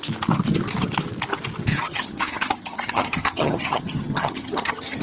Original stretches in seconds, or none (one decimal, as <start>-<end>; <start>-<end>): 0.0-1.7